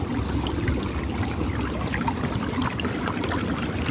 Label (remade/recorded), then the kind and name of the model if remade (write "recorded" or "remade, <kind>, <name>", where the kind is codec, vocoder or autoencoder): recorded